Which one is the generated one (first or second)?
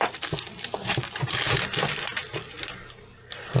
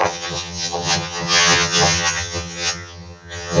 second